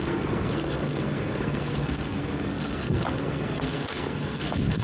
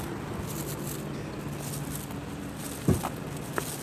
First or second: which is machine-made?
first